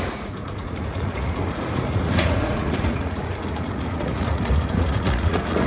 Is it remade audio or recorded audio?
remade